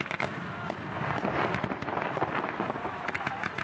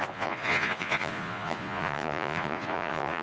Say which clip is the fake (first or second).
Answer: second